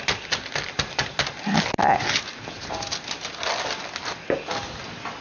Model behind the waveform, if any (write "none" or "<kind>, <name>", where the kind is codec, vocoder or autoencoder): none